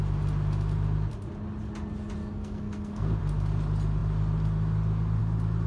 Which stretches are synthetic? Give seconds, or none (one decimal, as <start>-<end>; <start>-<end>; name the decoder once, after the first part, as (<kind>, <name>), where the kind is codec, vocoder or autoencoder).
2.2-3.2 (codec, SNAC)